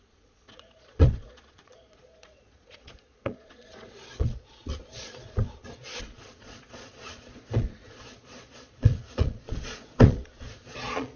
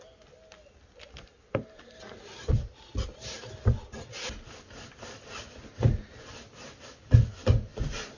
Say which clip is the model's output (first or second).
first